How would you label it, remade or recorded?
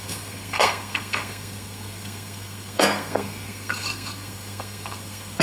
remade